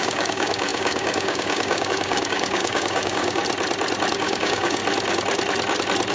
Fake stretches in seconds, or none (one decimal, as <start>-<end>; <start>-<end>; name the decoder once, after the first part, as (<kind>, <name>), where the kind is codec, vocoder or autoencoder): 0.0-3.4 (codec, DAC); 4.1-4.8